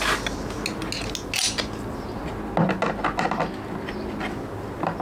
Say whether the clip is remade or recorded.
recorded